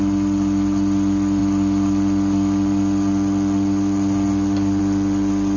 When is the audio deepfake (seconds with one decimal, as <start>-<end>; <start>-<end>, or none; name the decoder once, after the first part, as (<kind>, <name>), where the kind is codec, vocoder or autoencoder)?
none